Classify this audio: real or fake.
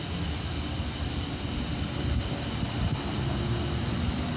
real